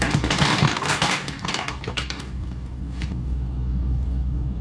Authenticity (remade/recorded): remade